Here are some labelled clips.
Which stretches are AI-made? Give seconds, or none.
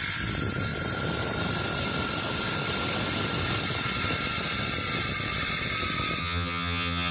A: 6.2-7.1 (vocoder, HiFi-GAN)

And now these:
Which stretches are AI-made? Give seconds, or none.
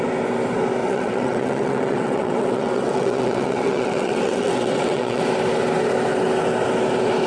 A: 0.8-5.2 (vocoder, WaveNeXt)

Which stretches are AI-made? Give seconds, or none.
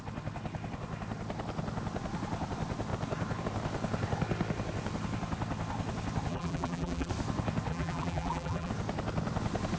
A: 6.3-7.1 (vocoder, BigVGAN v2); 7.7-8.7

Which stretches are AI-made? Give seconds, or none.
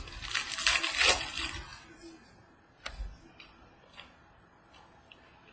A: none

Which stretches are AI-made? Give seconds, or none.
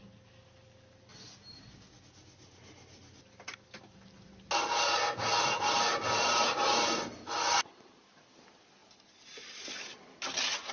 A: none